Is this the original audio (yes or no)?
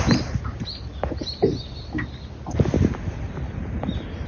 yes